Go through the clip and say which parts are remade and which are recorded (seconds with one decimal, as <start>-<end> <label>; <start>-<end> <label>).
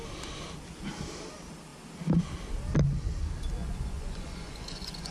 0.0-3.6 recorded; 3.6-5.1 remade